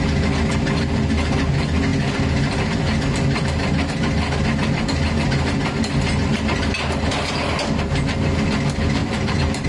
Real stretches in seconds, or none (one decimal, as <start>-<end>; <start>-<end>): 0.0-9.0